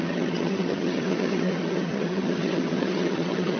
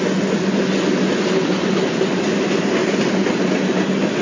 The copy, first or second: first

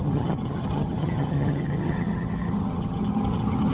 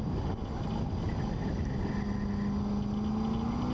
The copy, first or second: first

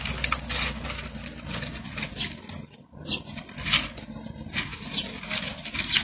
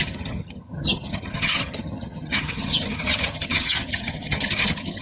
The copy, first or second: second